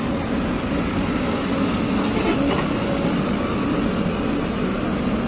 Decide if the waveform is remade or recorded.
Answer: recorded